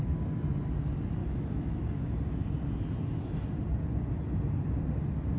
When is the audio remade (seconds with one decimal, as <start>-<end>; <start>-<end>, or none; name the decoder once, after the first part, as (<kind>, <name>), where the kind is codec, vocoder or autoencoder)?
1.2-2.0 (autoencoder, DAC-VAE)

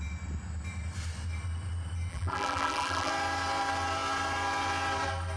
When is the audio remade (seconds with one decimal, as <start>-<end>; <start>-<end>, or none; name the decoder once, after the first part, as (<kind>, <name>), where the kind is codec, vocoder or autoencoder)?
2.1-3.1 (vocoder, BigVGAN v2)

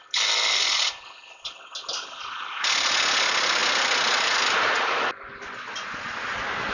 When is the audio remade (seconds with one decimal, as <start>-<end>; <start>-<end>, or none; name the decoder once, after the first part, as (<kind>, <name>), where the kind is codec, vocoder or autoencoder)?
none

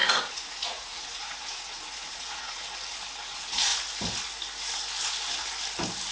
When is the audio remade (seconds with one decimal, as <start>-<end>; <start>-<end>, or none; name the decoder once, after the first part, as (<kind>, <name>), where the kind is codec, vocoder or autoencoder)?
0.0-2.6 (vocoder, Vocos); 3.2-3.7

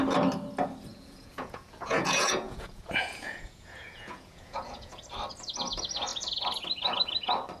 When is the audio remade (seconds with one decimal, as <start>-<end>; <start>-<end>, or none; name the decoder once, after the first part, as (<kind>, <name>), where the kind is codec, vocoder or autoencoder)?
0.9-5.0 (vocoder, Vocos)

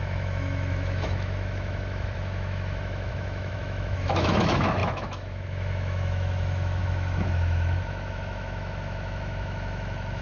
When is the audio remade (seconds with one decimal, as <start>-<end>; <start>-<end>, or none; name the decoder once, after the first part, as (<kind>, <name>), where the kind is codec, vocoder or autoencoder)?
0.0-10.2 (autoencoder, DAC-VAE)

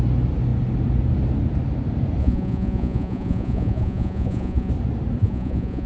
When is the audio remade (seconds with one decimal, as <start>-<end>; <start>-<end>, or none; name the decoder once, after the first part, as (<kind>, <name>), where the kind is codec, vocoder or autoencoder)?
2.2-4.7 (vocoder, Vocos); 5.2-5.9

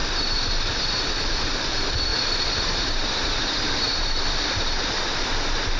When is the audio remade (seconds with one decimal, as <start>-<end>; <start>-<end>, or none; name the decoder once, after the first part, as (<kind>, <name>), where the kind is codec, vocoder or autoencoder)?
0.0-0.6 (vocoder, BigVGAN v2); 2.1-5.3